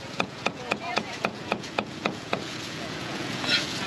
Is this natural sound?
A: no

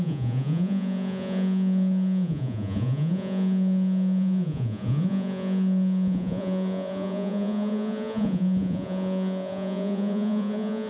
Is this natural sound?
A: no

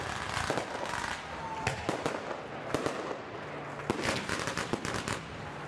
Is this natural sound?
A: yes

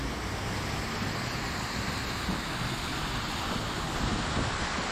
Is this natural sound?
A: yes